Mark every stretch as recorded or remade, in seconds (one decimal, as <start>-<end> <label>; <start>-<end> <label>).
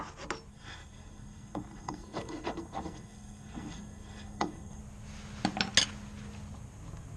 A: 0.0-0.5 recorded; 0.5-4.8 remade; 4.8-7.2 recorded